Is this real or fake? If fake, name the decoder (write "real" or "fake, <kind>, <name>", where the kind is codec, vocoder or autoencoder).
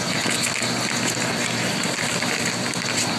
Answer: real